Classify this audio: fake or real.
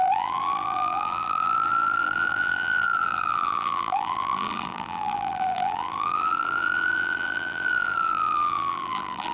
fake